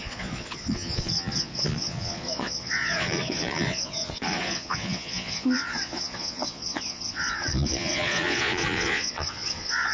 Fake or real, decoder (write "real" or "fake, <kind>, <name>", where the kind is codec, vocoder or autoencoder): fake, vocoder, Vocos